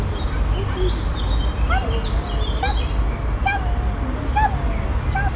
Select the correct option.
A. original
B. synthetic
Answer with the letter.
A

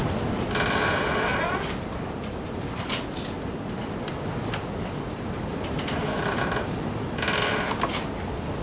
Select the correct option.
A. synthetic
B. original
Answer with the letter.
B